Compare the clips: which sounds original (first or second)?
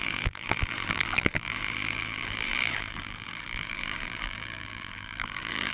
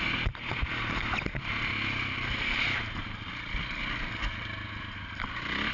second